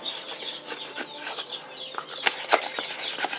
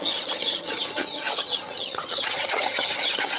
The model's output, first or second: second